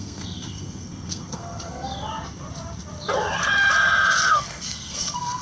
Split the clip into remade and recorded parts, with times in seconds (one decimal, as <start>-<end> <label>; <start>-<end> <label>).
0.0-2.1 remade; 2.1-4.3 recorded; 4.3-5.4 remade